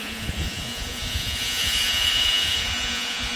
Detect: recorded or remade remade